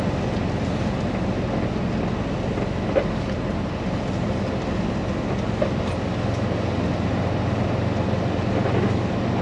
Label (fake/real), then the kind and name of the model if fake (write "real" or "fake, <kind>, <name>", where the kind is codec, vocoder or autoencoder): real